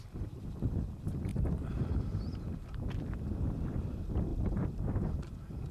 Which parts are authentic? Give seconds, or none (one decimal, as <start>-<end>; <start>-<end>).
0.0-5.7